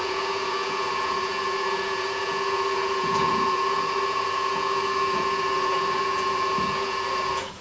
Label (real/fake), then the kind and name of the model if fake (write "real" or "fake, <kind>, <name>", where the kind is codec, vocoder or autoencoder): fake, vocoder, Vocos